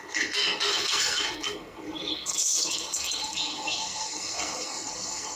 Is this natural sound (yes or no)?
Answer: no